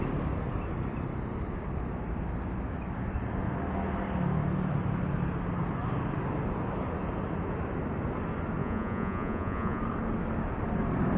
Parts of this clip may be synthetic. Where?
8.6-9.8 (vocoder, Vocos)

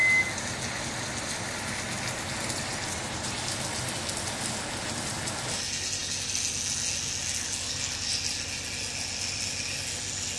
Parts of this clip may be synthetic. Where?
none